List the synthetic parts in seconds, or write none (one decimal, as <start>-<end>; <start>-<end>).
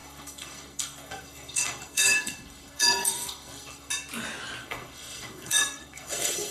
0.0-3.9; 4.6-6.5